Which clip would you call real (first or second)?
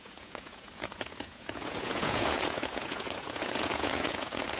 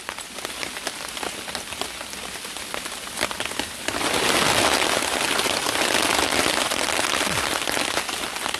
second